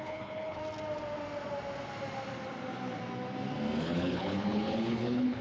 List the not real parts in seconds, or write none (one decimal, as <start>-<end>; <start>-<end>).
0.0-0.6; 3.8-5.4